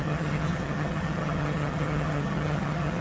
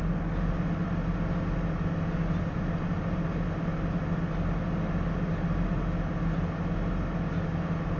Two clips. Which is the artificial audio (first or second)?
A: first